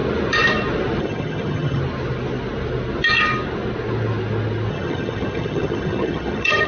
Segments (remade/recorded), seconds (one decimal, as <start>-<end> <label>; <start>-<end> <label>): 0.0-1.0 recorded; 1.0-1.8 remade; 1.8-4.7 recorded; 4.7-6.7 remade